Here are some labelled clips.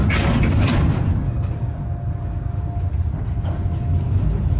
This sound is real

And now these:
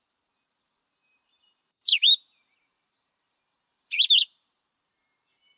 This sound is fake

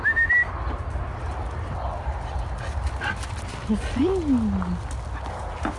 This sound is real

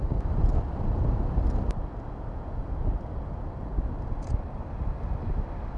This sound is real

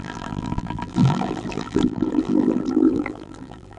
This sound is fake